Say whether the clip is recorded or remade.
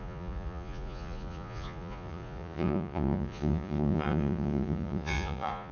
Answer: remade